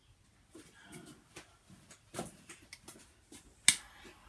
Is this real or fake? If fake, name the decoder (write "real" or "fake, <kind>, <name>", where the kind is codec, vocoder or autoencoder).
real